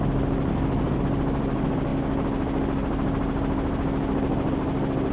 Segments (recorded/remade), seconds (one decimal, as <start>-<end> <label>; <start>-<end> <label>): 0.0-0.5 recorded; 0.5-1.0 remade; 1.0-5.1 recorded